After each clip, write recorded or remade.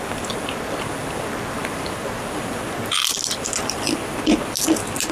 recorded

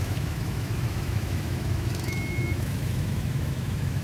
remade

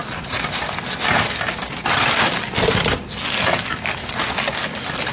recorded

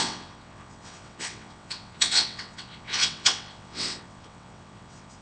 remade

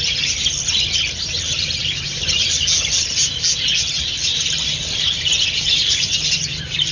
recorded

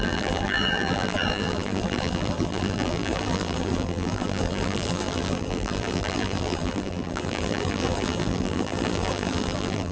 remade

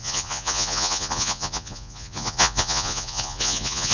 remade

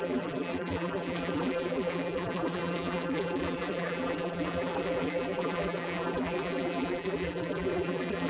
remade